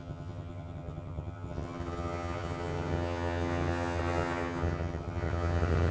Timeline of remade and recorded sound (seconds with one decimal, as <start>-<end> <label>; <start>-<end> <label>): 0.0-5.9 remade